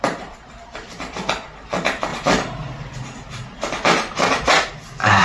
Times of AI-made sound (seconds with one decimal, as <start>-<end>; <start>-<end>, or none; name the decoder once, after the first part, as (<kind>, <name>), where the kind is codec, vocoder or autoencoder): none